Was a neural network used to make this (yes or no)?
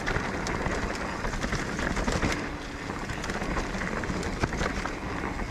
no